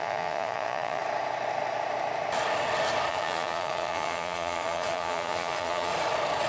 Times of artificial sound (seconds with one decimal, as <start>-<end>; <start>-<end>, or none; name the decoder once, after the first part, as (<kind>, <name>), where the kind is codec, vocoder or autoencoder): 0.0-1.0 (vocoder, Vocos); 3.1-5.9